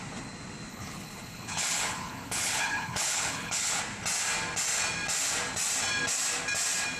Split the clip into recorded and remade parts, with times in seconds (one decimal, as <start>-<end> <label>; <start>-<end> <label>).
0.0-0.7 recorded; 0.7-3.8 remade; 3.8-7.0 recorded